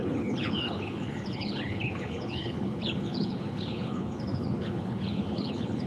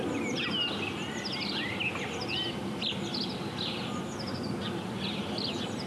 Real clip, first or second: second